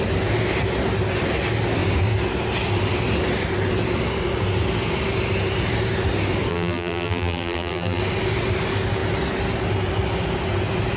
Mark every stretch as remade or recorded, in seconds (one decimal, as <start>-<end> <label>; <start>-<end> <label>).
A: 0.0-6.5 recorded; 6.5-8.0 remade; 8.0-11.0 recorded